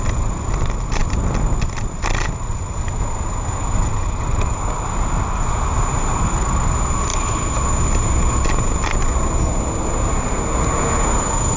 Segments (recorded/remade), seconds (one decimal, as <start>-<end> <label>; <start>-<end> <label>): 0.0-11.6 recorded